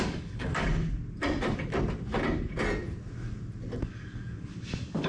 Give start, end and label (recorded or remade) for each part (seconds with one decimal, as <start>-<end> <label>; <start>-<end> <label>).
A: 0.0-0.7 remade; 0.7-3.8 recorded; 3.8-5.1 remade

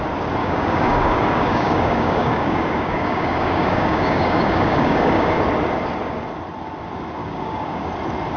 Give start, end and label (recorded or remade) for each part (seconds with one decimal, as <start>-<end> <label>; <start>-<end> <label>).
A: 0.0-0.4 recorded; 0.4-5.4 remade; 5.4-7.2 recorded; 7.2-7.9 remade; 7.9-8.4 recorded

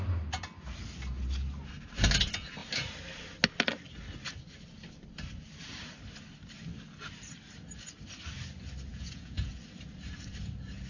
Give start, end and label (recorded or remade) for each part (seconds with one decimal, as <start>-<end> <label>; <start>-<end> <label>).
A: 0.0-8.9 recorded; 8.9-9.5 remade; 9.5-10.9 recorded

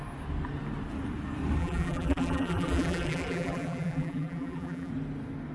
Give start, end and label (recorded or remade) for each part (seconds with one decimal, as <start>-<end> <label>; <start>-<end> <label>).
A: 0.0-1.6 recorded; 1.6-4.9 remade; 4.9-5.5 recorded